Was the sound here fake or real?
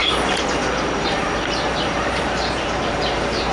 fake